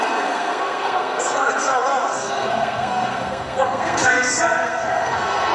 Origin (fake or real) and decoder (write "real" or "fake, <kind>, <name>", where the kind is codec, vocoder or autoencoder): fake, codec, SNAC